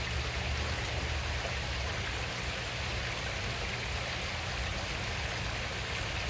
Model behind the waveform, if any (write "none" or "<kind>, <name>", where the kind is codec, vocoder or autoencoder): none